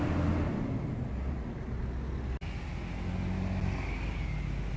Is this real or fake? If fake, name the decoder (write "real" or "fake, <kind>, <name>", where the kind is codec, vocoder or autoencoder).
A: real